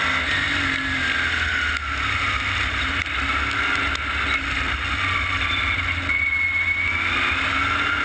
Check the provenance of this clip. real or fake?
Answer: real